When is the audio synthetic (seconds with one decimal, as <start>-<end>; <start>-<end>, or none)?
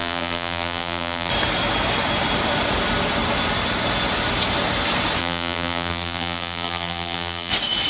0.0-1.3; 5.2-7.5